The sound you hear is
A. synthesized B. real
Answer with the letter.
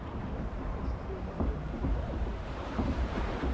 A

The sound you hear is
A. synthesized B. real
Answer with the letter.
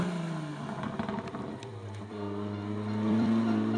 A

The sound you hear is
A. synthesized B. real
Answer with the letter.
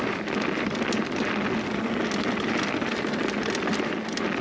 B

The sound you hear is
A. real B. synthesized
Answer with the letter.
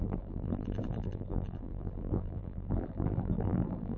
B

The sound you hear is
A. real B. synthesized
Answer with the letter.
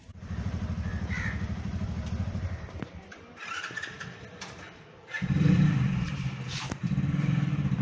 B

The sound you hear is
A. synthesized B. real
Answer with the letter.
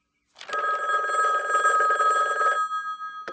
B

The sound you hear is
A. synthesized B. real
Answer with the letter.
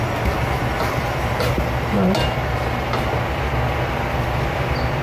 B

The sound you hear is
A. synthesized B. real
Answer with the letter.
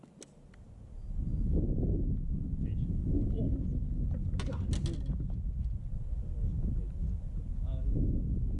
B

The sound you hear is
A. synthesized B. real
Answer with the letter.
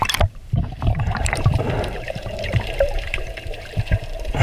A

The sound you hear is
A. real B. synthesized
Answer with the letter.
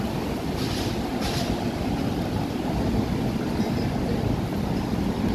A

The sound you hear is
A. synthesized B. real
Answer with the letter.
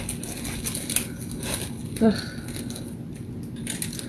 B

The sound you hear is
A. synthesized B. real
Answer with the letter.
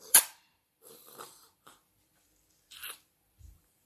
A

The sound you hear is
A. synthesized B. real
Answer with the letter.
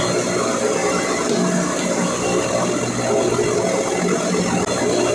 B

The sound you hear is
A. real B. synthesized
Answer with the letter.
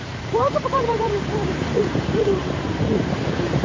B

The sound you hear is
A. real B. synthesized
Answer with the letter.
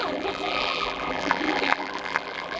B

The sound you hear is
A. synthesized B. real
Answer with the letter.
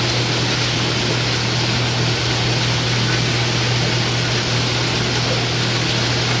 B